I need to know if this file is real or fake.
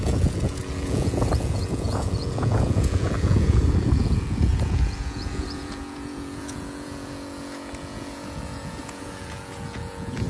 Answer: fake